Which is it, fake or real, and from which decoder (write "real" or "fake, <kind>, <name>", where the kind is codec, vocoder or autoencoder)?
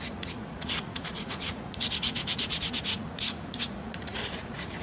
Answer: fake, vocoder, Vocos